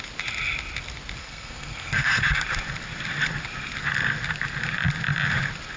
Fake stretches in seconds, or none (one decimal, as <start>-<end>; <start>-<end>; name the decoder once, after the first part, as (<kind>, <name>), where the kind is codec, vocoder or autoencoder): 1.2-2.2 (codec, SNAC)